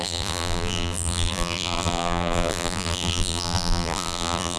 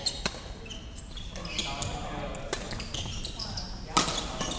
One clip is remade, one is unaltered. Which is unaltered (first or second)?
second